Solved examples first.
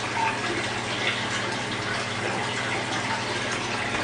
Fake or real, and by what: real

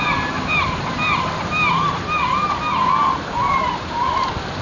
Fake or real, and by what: real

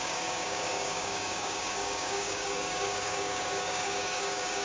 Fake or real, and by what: fake, codec, DAC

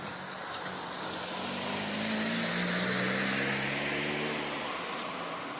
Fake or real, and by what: real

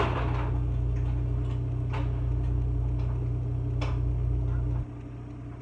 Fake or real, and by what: real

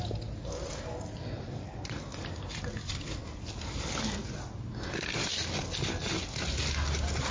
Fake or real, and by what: real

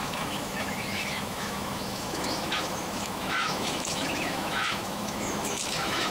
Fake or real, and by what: fake, autoencoder, DAC-VAE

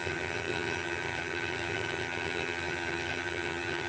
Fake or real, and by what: fake, vocoder, HiFi-GAN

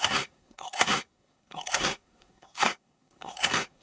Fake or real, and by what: fake, codec, SNAC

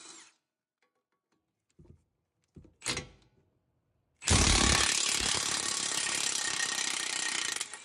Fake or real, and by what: real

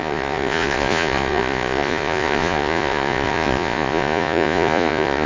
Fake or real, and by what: fake, vocoder, Vocos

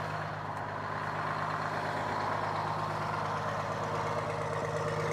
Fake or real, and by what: real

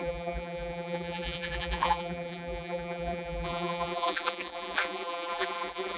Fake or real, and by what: fake, vocoder, BigVGAN v2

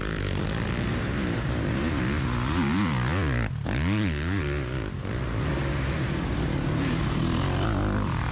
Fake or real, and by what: real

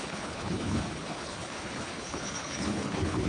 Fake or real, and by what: fake, codec, HILCodec